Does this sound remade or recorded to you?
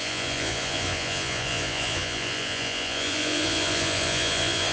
remade